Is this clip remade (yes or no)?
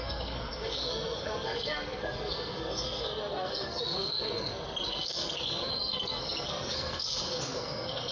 yes